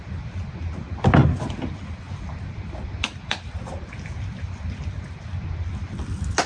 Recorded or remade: recorded